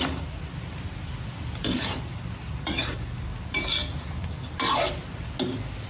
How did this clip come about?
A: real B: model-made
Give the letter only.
A